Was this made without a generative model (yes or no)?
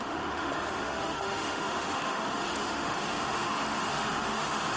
no